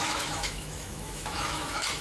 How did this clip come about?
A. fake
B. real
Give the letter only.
A